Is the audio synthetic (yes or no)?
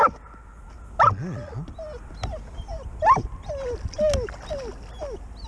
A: no